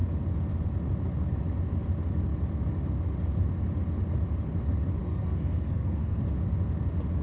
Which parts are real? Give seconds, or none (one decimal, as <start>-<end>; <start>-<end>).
0.0-5.0; 6.2-7.2